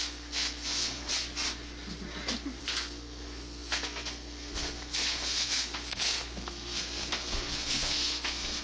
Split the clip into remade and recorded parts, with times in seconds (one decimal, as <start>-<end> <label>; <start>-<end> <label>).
0.0-1.1 remade; 1.1-2.6 recorded; 2.6-8.6 remade